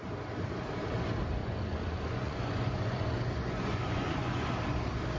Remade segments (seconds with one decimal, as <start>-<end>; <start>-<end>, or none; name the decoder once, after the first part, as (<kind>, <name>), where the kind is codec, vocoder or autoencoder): 1.4-4.5 (vocoder, Vocos)